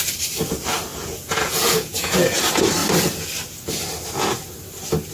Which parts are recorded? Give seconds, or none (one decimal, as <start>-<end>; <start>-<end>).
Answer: 0.0-0.9; 2.4-5.1

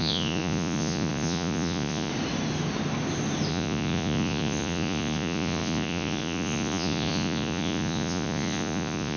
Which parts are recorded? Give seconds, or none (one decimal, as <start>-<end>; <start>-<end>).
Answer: 2.1-3.5

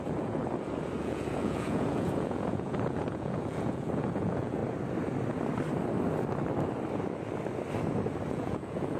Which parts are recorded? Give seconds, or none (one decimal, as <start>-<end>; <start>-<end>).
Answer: 0.4-1.0; 4.6-8.3

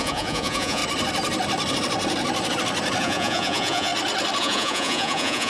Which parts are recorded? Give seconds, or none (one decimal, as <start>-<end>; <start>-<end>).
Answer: 0.8-3.0; 3.9-4.4

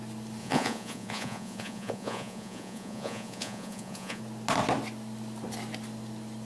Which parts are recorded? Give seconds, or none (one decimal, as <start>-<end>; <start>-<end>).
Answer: 0.0-0.4; 4.2-6.4